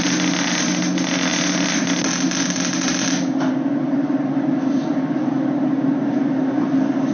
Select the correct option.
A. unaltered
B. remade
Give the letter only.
A